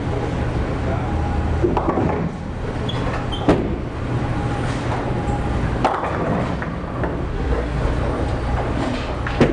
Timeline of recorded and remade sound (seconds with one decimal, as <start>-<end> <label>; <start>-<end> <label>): 0.0-7.3 recorded; 7.3-7.8 remade; 7.8-9.5 recorded